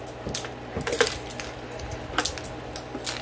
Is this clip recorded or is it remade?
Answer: recorded